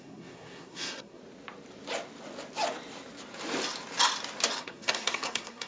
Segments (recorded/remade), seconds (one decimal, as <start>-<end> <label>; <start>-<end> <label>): 0.0-1.2 remade; 1.2-4.6 recorded; 4.6-5.7 remade